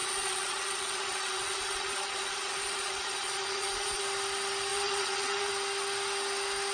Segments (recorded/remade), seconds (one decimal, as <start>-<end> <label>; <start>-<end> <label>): 0.0-4.0 remade; 4.0-4.7 recorded; 4.7-5.5 remade; 5.5-6.7 recorded